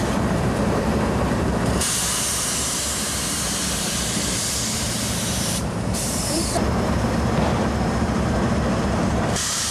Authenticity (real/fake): fake